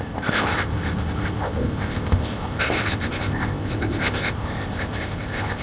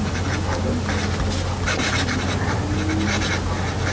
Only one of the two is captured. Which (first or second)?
second